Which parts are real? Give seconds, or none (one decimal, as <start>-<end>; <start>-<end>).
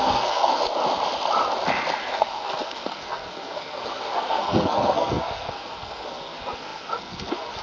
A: 0.7-2.0